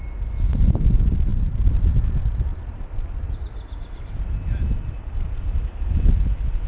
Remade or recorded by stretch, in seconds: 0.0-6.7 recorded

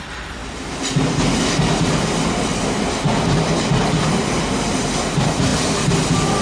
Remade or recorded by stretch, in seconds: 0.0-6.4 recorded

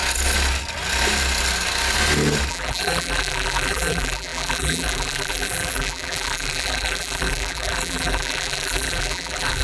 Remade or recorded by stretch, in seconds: 0.0-2.5 recorded; 2.5-9.6 remade